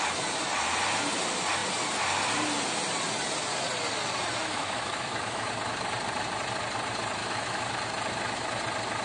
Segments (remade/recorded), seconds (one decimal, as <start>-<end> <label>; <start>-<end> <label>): 0.0-4.4 recorded; 4.4-5.5 remade; 5.5-7.2 recorded; 7.2-7.7 remade; 7.7-9.0 recorded